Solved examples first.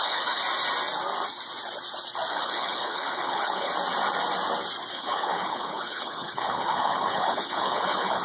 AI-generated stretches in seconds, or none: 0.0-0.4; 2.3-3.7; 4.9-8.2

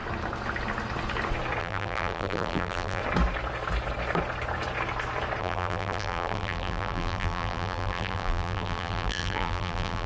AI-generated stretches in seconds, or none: 1.6-3.0; 5.4-10.1

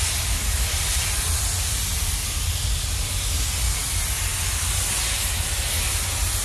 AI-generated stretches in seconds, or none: 0.5-2.1

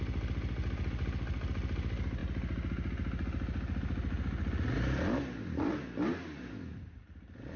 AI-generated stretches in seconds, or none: none

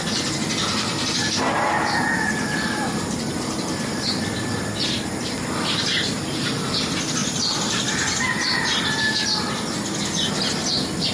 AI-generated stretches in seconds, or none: none